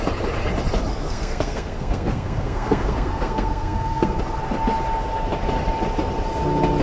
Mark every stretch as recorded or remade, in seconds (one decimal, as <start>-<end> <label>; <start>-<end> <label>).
0.0-0.9 recorded; 0.9-4.2 remade; 4.2-6.8 recorded